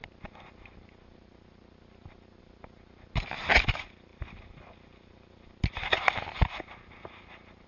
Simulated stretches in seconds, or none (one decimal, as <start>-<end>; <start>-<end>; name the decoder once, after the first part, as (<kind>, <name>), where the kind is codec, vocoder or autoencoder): none